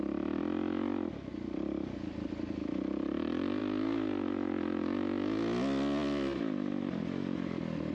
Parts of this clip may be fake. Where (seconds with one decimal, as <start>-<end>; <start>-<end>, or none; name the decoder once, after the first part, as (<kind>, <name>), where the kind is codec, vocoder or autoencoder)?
0.0-3.6 (vocoder, BigVGAN v2); 6.4-7.9